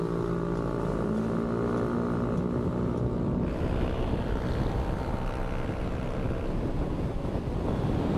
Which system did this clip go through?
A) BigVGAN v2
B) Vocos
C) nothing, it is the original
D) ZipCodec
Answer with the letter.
C